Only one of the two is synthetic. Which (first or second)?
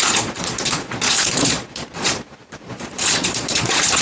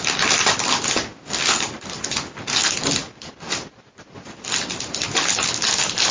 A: first